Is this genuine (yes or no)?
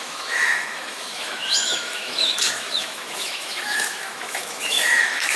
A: no